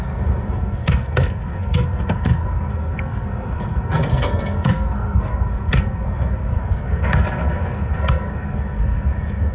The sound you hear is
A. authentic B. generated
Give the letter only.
B